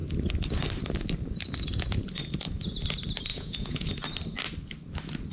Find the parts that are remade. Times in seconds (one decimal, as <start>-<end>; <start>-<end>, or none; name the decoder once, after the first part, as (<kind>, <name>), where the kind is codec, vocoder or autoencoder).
3.3-3.9 (vocoder, Vocos)